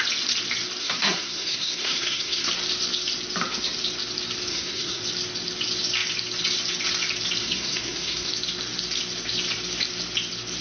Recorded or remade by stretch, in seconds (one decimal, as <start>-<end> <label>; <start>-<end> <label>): 0.0-0.8 recorded; 0.8-2.5 remade; 2.5-4.5 recorded; 4.5-5.0 remade; 5.0-7.4 recorded; 7.4-8.3 remade; 8.3-10.6 recorded